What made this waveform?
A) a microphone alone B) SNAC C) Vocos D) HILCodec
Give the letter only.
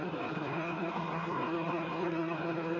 B